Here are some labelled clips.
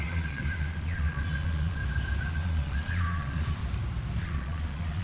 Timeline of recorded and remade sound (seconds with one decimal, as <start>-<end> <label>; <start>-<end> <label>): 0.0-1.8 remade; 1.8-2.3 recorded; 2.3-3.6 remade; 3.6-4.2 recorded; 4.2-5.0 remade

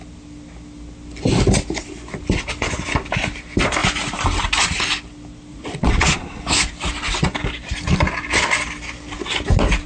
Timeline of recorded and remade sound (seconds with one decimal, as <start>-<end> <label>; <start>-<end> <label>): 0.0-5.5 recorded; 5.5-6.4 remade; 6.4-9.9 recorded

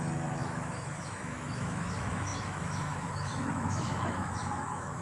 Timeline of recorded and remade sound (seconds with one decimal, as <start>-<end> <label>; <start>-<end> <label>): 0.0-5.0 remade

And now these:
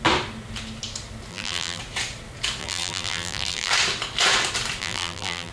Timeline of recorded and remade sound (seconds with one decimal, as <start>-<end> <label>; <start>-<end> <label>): 0.0-1.3 recorded; 1.3-1.8 remade; 1.8-2.6 recorded; 2.6-3.7 remade; 3.7-4.8 recorded; 4.8-5.5 remade